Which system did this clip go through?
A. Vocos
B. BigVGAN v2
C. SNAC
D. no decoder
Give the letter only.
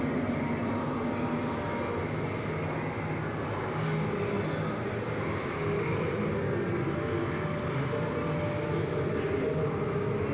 D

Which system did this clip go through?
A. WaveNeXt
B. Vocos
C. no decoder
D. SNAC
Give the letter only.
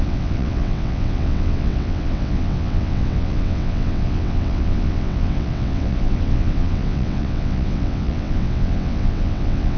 A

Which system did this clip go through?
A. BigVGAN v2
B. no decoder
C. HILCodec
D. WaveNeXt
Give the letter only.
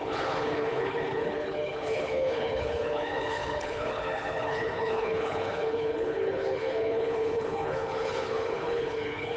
C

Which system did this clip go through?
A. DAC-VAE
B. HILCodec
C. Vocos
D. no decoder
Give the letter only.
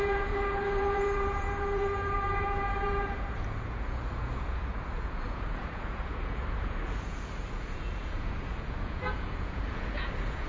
C